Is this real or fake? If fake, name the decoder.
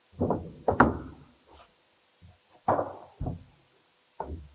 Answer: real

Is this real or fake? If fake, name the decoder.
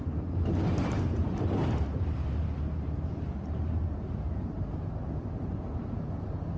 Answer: fake, vocoder, BigVGAN v2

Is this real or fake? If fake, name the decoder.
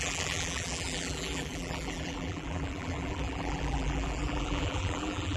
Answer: fake, vocoder, BigVGAN v2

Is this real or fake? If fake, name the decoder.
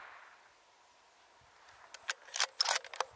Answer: real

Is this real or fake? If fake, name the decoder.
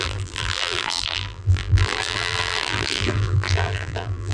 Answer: fake, vocoder, BigVGAN v2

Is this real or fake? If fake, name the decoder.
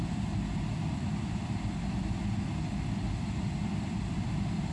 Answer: fake, vocoder, BigVGAN v2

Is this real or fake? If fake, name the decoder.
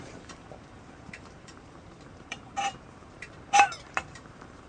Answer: fake, vocoder, BigVGAN v2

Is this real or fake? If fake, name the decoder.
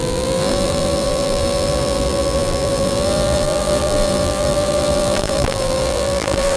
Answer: fake, vocoder, BigVGAN v2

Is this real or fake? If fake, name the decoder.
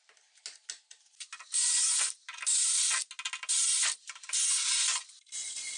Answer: real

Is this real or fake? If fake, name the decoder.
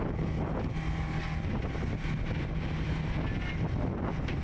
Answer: real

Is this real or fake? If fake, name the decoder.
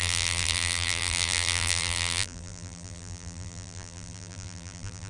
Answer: fake, vocoder, BigVGAN v2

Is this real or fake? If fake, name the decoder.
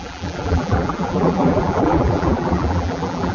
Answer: fake, vocoder, BigVGAN v2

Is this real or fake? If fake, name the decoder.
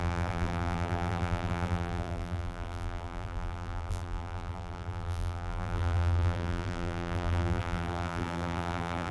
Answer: fake, vocoder, BigVGAN v2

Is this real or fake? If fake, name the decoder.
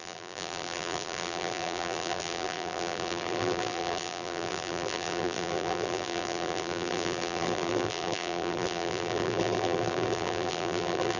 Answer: fake, vocoder, BigVGAN v2